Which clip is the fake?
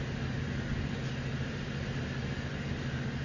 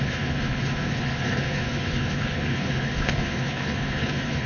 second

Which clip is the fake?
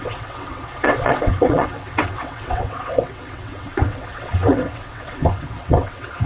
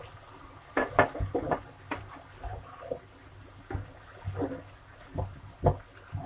first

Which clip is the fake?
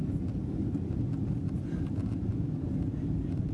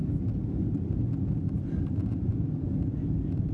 first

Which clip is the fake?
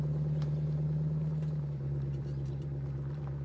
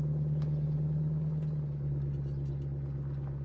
first